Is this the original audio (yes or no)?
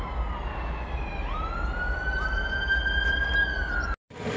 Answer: yes